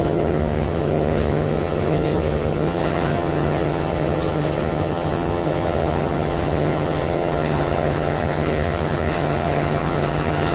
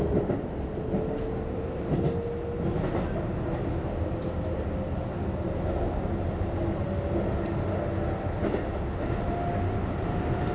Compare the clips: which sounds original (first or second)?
second